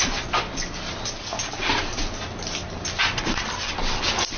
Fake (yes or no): no